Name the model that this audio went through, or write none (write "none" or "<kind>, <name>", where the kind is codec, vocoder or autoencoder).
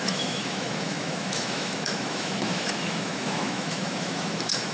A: autoencoder, DAC-VAE